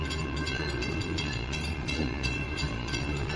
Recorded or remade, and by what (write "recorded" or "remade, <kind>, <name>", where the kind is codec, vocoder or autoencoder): remade, vocoder, Vocos